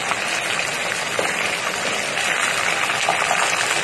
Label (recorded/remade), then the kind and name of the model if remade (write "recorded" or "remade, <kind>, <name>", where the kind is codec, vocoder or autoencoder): recorded